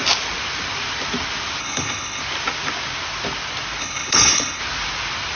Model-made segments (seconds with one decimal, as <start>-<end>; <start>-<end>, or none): 1.6-2.2; 3.8-4.6

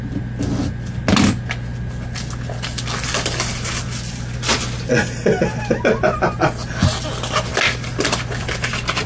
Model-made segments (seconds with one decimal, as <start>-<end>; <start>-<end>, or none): none

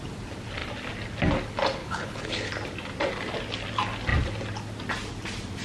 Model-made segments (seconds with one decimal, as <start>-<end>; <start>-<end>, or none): 1.8-2.5

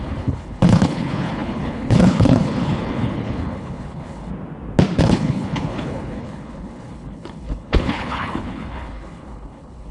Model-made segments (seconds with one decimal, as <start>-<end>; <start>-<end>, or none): 0.0-4.3; 5.0-9.9

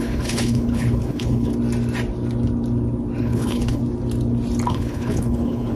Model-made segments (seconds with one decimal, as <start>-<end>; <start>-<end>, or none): 0.0-1.5; 3.2-3.8; 4.7-5.8